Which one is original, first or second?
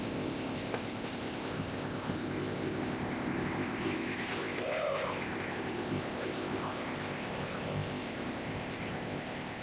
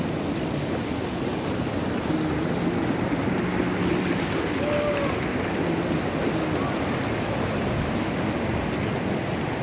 second